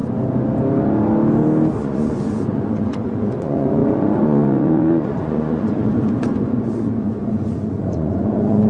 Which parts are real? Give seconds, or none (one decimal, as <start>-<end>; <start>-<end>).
0.0-1.8